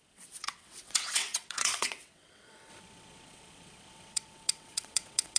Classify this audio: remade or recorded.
remade